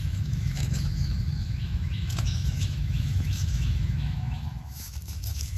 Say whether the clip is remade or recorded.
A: remade